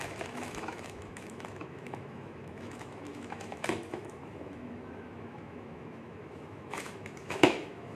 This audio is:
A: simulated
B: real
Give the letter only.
A